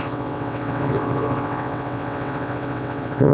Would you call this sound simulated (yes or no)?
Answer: yes